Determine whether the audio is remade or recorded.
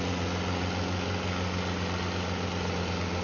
recorded